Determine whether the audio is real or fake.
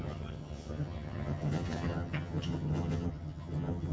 fake